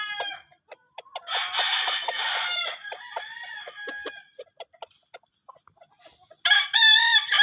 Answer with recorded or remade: recorded